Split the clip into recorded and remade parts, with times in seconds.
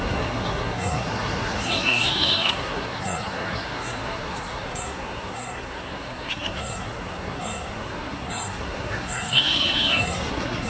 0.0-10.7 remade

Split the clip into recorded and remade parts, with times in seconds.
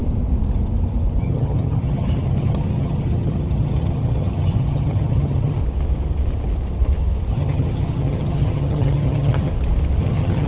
0.0-1.2 recorded; 1.2-5.6 remade; 5.6-7.3 recorded; 7.3-9.5 remade; 9.5-10.0 recorded; 10.0-10.5 remade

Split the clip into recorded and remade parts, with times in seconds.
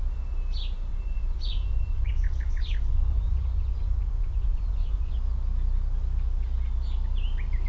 0.0-0.9 recorded; 0.9-5.1 remade; 5.1-7.7 recorded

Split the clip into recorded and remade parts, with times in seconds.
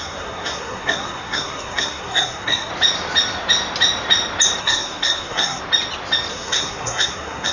0.0-2.7 remade; 2.7-4.6 recorded; 4.6-5.6 remade; 5.6-6.3 recorded; 6.3-7.5 remade